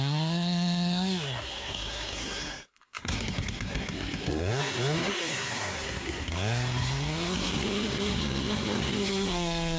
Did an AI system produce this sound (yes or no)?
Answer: yes